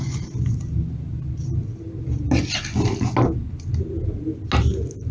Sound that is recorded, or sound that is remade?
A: recorded